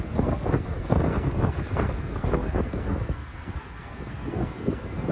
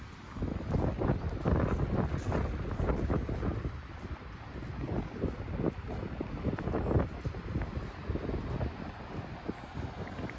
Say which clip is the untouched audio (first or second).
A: second